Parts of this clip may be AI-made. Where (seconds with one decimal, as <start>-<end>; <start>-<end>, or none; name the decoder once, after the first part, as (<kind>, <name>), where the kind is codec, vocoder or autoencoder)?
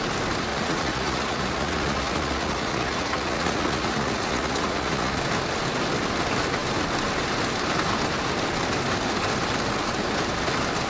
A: 0.5-5.2 (vocoder, Vocos)